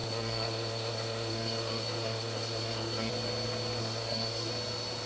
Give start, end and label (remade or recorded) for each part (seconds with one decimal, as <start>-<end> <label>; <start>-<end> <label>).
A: 0.0-3.1 remade; 3.1-3.8 recorded; 3.8-4.5 remade; 4.5-5.1 recorded